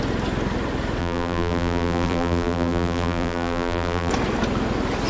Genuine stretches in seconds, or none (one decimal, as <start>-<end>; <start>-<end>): 0.0-1.0; 4.1-5.1